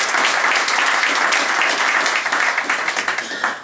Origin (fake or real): real